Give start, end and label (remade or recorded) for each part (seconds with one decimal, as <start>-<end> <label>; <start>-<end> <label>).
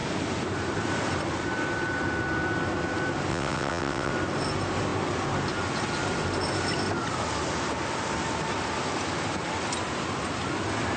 0.0-3.3 recorded; 3.3-4.1 remade; 4.1-11.0 recorded